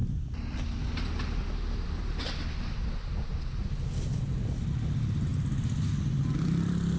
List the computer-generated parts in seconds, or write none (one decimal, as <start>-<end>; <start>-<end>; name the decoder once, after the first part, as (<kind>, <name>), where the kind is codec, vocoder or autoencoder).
none